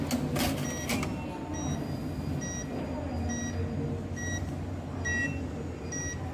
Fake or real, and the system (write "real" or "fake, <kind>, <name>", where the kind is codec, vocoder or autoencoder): real